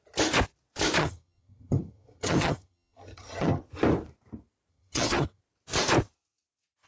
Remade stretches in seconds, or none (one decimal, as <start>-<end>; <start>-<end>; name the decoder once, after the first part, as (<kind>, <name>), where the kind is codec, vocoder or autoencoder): 1.0-3.6 (vocoder, HiFi-GAN); 4.7-5.4